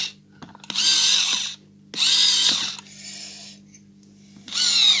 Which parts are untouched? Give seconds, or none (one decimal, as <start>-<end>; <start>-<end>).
0.0-5.0